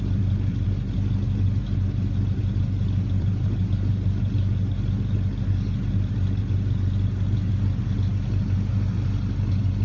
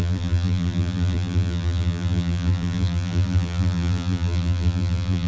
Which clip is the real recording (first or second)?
first